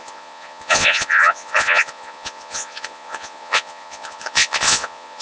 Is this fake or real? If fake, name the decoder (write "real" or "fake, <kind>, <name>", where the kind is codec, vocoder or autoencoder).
fake, vocoder, Vocos